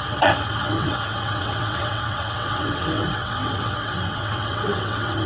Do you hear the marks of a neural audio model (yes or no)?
yes